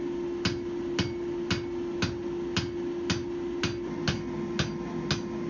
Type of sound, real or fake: real